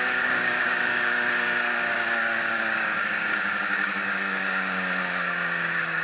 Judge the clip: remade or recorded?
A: remade